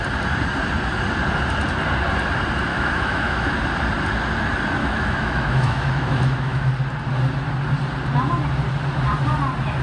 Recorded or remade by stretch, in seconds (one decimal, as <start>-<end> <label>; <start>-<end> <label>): 0.0-2.7 recorded; 2.7-3.5 remade; 3.5-4.8 recorded; 4.8-6.7 remade; 6.7-9.8 recorded